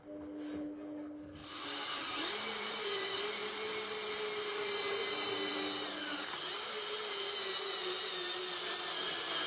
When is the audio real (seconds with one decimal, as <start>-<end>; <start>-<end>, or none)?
0.0-9.5